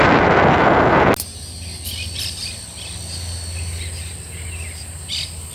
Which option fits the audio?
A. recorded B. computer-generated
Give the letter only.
A